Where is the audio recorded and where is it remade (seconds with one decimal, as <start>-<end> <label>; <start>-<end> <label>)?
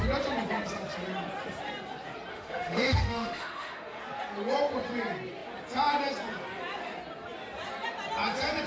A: 0.0-2.3 recorded; 2.3-4.0 remade; 4.0-8.7 recorded